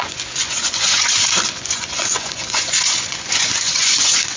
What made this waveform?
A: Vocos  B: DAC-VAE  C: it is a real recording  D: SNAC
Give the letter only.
A